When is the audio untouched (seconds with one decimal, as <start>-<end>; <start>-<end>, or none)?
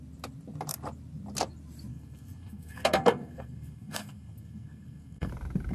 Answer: 0.0-1.9; 5.3-5.7